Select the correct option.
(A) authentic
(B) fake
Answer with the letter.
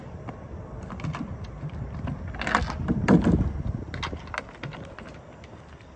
A